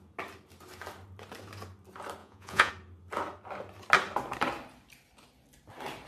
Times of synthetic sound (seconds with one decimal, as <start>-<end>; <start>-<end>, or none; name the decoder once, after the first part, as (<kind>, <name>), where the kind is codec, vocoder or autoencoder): 2.2-2.7 (vocoder, Vocos)